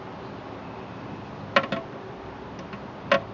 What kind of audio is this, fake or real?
real